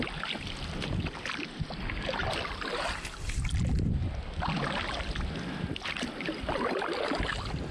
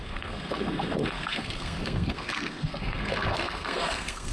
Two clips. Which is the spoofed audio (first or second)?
second